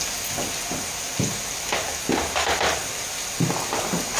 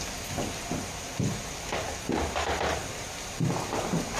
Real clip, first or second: first